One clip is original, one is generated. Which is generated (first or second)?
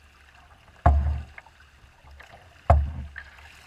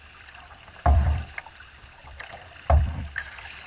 second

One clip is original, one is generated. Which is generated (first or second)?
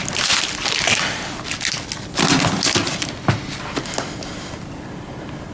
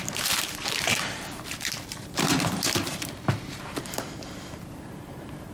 second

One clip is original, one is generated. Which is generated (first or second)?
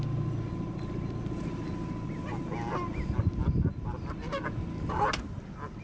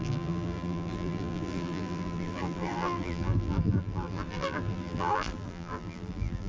second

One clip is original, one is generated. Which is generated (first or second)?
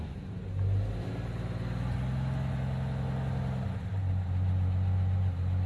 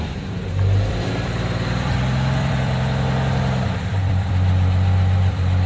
second